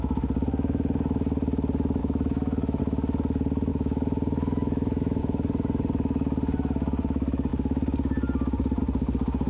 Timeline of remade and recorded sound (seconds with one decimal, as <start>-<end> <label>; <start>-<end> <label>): 0.0-2.0 recorded; 2.0-2.8 remade; 2.8-3.7 recorded; 3.7-5.2 remade; 5.2-9.5 recorded